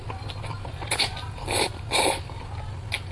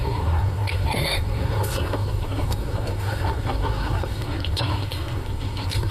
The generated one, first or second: second